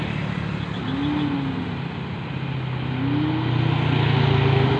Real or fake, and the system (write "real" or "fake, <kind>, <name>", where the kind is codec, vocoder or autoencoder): real